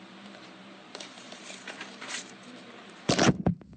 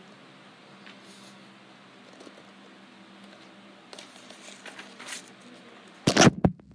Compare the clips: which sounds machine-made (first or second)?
first